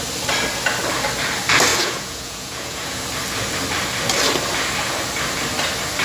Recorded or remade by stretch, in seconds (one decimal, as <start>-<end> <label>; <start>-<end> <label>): 0.0-1.7 recorded; 1.7-3.0 remade; 3.0-6.0 recorded